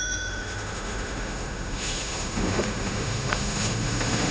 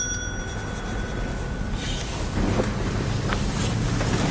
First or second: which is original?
second